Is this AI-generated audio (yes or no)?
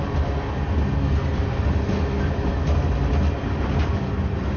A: no